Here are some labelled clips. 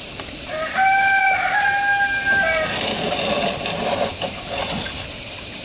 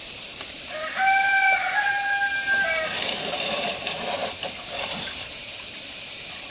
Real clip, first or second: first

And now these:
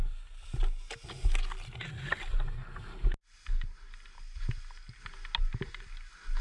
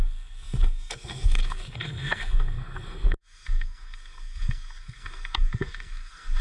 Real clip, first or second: first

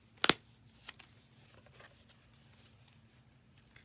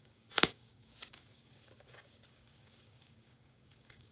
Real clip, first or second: first